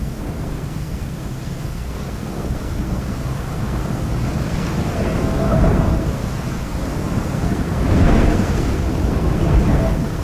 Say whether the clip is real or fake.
fake